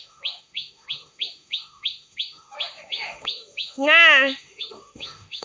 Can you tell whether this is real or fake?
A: fake